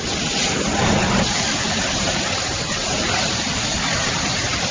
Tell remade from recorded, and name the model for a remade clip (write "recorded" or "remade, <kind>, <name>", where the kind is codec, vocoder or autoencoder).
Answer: recorded